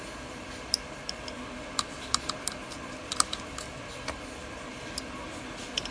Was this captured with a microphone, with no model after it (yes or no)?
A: no